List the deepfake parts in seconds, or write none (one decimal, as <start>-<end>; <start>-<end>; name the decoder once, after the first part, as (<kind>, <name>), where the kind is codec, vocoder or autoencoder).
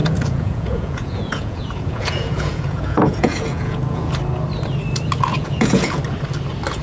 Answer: 0.0-4.1 (vocoder, Vocos); 5.3-6.0